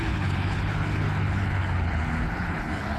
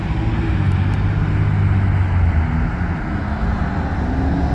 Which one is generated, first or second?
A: first